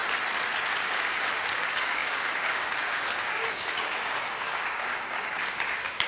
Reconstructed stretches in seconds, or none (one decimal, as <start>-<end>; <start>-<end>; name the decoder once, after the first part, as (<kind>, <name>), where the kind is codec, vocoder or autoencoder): 0.7-6.1 (codec, DAC)